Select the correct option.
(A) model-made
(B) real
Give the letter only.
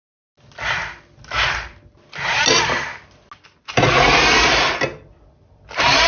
B